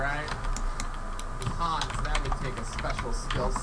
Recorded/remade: recorded